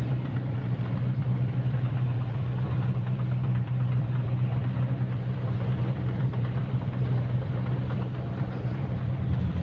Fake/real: fake